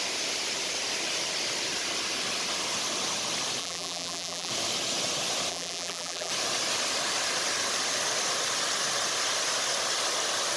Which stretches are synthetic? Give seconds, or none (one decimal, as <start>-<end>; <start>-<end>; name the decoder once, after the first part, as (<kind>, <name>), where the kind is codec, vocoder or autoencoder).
3.6-4.5 (vocoder, BigVGAN v2); 5.5-6.3